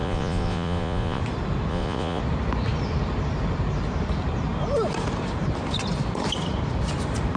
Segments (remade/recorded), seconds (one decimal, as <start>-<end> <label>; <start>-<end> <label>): 0.0-1.2 remade; 1.2-1.7 recorded; 1.7-2.2 remade; 2.2-7.4 recorded